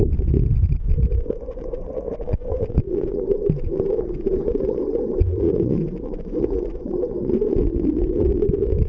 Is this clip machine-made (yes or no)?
yes